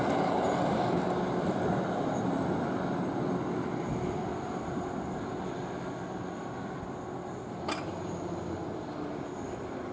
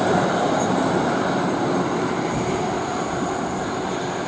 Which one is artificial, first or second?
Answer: second